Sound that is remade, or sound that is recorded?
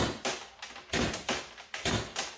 recorded